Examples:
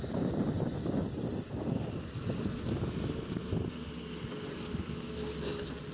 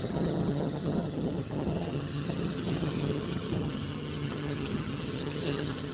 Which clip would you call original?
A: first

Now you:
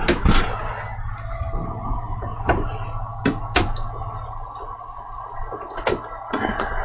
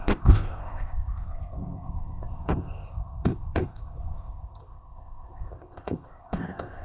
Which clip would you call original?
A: first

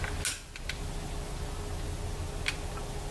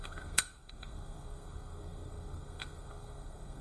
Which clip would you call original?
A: first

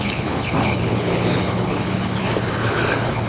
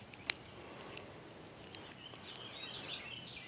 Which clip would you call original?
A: second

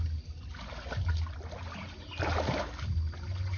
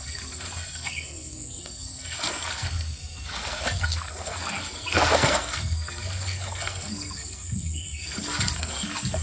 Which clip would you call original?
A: first